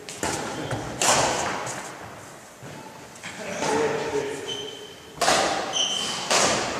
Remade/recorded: recorded